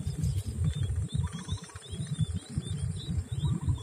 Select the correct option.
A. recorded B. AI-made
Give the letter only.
A